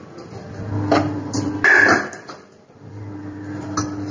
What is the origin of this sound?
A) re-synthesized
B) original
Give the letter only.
A